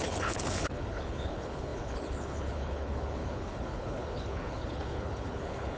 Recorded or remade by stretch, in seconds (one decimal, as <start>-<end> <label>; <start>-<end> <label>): 0.0-5.8 remade